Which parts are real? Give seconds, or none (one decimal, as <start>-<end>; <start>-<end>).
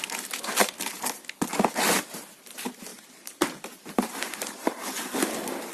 0.0-2.9; 5.1-5.7